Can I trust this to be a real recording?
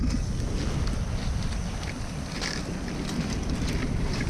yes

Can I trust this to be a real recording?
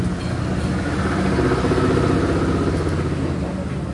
yes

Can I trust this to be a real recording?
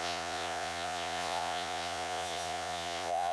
no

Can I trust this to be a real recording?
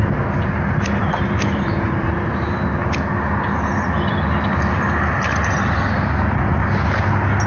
yes